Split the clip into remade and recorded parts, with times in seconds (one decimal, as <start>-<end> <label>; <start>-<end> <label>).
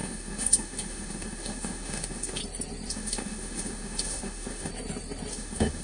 0.0-2.4 remade; 2.4-2.9 recorded; 2.9-4.7 remade; 4.7-5.3 recorded; 5.3-5.8 remade